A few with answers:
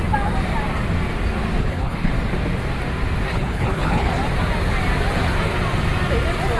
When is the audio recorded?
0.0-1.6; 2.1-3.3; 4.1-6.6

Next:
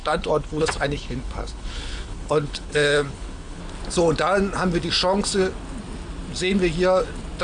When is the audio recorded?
3.6-7.4

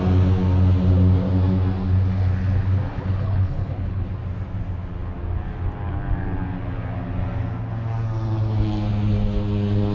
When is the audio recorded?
0.0-2.9; 4.1-9.9

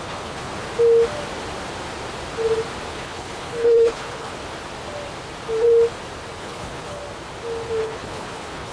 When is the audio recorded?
0.5-2.9; 4.3-6.4; 7.0-7.8

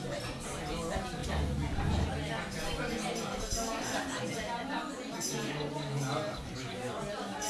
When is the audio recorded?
0.0-7.5

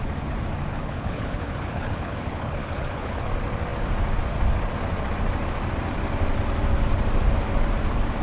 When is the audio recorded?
0.0-0.7; 3.3-8.2